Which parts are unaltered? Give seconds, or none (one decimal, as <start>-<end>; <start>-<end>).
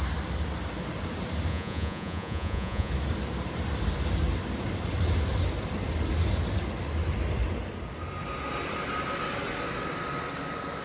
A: 0.0-1.5; 2.9-10.8